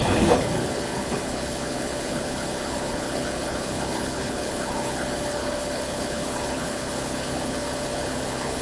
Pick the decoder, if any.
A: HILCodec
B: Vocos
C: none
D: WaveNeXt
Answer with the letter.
A